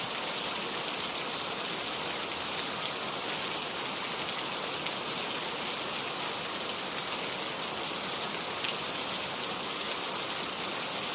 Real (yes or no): yes